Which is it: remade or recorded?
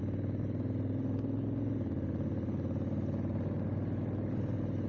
recorded